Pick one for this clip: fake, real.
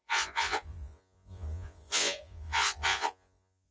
fake